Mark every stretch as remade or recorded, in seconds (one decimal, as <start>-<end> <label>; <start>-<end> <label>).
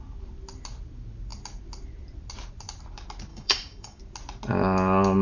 0.0-3.3 recorded; 3.3-4.0 remade; 4.0-5.2 recorded